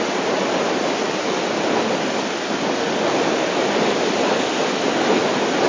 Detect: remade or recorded recorded